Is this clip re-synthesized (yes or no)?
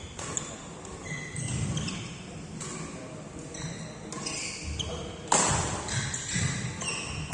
no